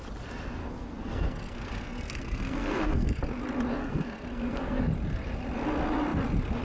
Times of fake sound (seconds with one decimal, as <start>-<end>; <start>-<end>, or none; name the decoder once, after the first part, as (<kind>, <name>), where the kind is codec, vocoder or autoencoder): 0.6-3.2 (codec, SNAC); 3.8-4.8